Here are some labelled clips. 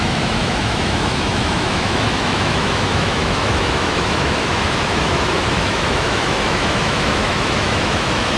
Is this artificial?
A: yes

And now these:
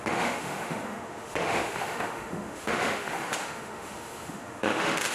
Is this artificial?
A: yes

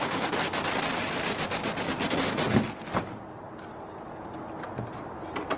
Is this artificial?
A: no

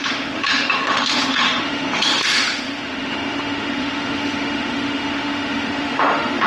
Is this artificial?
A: yes